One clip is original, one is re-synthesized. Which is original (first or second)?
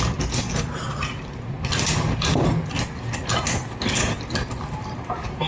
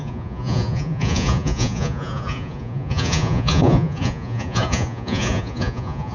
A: first